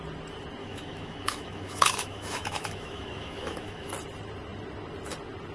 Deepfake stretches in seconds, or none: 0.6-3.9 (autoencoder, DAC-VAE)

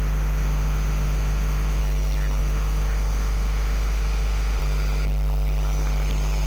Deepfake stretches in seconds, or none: 0.0-1.8 (autoencoder, DAC-VAE); 2.4-4.6